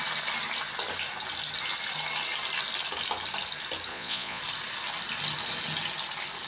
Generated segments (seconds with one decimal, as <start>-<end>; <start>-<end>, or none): 3.9-4.4